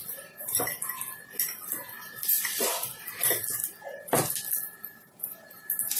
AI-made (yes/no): no